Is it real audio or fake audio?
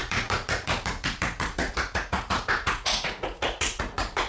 fake